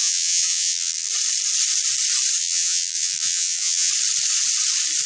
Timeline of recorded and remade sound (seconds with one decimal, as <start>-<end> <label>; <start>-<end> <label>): 0.0-1.1 remade; 1.1-2.4 recorded; 2.4-3.9 remade; 3.9-5.1 recorded